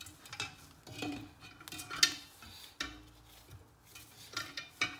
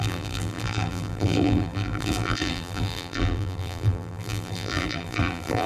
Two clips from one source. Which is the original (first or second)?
first